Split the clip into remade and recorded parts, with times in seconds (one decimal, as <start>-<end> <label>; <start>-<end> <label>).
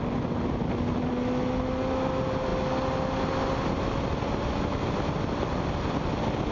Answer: 0.0-6.5 recorded